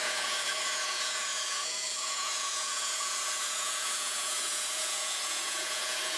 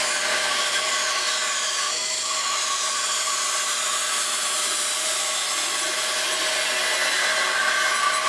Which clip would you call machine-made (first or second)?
first